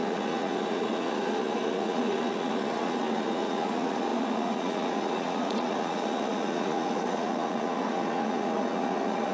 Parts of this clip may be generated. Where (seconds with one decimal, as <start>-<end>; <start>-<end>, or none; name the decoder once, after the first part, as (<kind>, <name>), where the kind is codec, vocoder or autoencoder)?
0.0-9.3 (vocoder, Vocos)